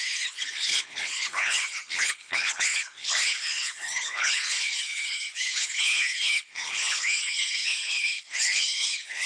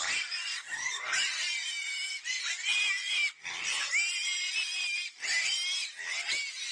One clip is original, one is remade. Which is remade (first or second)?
first